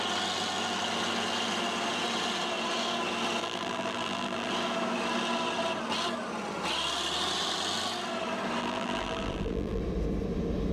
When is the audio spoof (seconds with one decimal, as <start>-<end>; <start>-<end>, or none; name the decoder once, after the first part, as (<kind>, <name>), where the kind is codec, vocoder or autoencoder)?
3.4-4.5 (vocoder, BigVGAN v2); 8.6-9.8